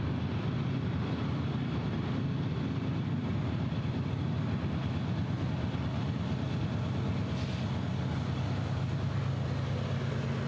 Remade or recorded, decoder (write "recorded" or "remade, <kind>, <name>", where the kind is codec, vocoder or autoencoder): recorded